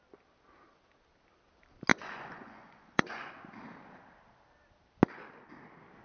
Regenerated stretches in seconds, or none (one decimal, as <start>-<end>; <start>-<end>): 1.9-3.3